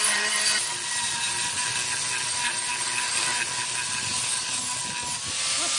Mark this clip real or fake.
real